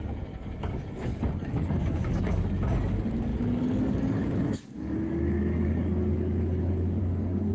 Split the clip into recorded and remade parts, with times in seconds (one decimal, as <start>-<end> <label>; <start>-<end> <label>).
0.0-7.5 remade

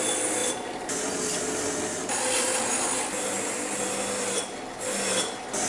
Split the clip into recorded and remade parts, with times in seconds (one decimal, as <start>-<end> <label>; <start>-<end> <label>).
0.0-5.7 recorded